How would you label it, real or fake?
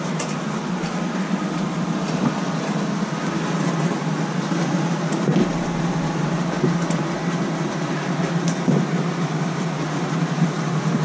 real